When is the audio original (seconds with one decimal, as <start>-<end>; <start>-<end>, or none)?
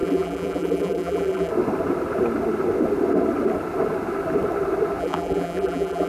1.5-5.0